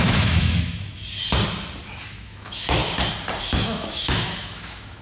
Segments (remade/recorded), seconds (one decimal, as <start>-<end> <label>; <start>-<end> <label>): 0.0-1.0 remade; 1.0-2.1 recorded; 2.1-2.8 remade; 2.8-3.4 recorded; 3.4-5.0 remade